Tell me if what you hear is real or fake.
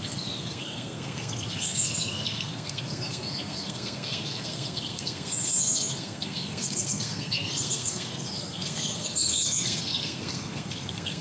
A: fake